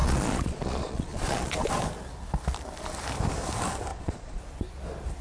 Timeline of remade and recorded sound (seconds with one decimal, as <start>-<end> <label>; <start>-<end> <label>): 0.0-1.7 remade; 1.7-3.9 recorded; 3.9-4.4 remade; 4.4-5.2 recorded